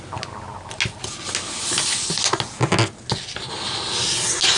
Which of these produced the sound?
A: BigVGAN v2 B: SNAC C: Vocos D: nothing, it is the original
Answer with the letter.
D